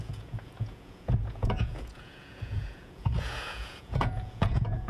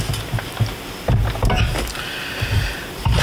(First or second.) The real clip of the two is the second